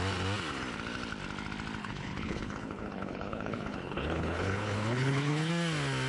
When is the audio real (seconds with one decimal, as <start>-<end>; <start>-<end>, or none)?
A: 0.0-1.8; 5.5-6.1